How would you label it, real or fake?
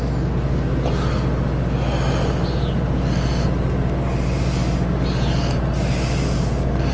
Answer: real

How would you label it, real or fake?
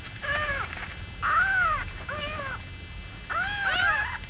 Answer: real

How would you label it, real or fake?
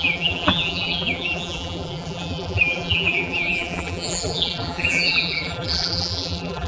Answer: fake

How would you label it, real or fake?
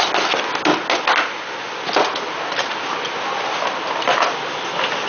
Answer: real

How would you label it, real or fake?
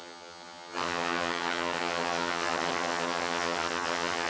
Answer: fake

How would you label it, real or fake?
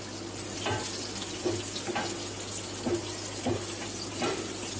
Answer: real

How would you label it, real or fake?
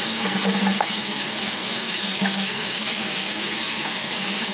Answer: fake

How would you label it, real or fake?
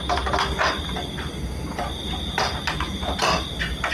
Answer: real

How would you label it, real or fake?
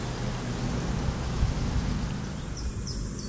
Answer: real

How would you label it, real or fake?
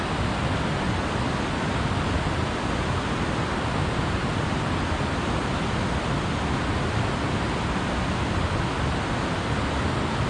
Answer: real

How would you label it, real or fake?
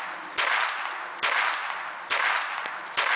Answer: real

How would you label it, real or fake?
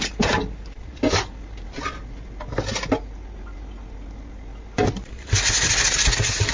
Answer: real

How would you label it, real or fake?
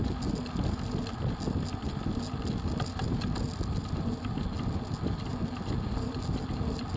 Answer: real